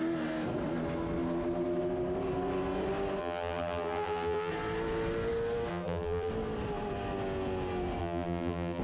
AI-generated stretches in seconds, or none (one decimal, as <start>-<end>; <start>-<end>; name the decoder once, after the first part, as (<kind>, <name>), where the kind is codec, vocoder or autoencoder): 3.2-4.5 (vocoder, BigVGAN v2); 5.7-6.3; 8.0-8.8